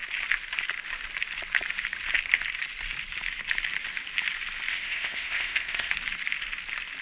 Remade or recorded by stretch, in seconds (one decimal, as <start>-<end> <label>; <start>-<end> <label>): 0.0-4.7 recorded; 4.7-5.9 remade; 5.9-7.0 recorded